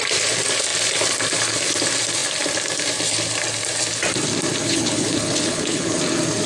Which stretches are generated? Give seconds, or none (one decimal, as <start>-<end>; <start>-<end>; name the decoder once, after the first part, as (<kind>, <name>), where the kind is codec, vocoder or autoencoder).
4.6-6.0 (codec, HILCodec)